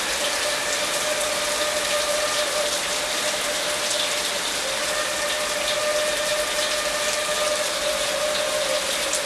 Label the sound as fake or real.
real